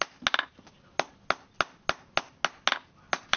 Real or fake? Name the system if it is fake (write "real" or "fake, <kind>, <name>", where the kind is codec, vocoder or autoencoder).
real